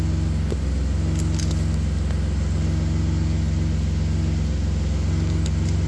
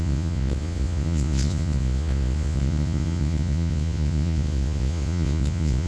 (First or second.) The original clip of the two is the first